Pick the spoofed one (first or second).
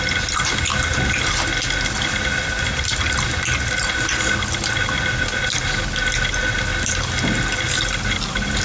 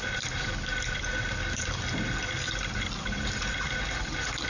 second